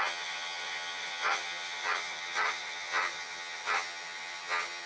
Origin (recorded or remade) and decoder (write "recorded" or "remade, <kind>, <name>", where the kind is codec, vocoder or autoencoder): remade, vocoder, HiFi-GAN